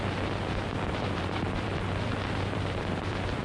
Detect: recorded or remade remade